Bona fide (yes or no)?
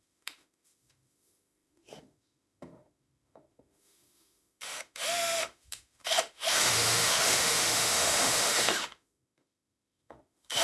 no